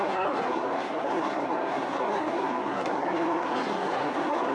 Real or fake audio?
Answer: fake